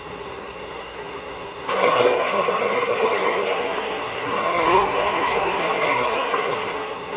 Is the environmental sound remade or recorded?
remade